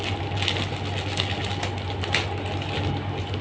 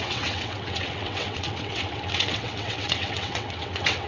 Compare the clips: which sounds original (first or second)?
first